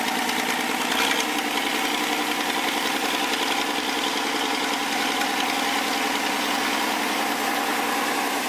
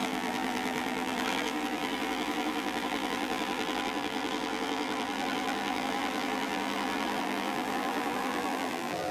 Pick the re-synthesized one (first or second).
second